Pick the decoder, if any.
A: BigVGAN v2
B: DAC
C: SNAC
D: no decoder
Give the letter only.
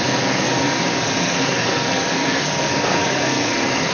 C